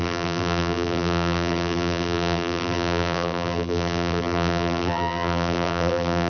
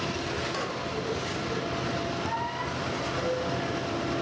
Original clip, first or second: second